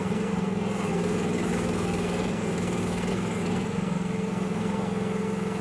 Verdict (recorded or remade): remade